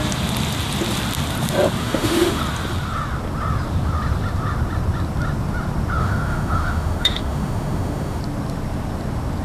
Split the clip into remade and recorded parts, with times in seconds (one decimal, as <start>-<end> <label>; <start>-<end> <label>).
0.0-1.8 recorded; 1.8-2.4 remade; 2.4-6.0 recorded; 6.0-8.2 remade; 8.2-9.4 recorded